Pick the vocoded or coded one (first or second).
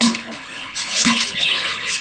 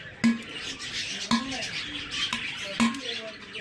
first